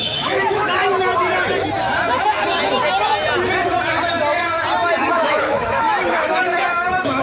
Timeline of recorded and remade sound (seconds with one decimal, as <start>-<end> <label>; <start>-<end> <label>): 0.0-0.8 remade; 0.8-5.1 recorded; 5.1-7.2 remade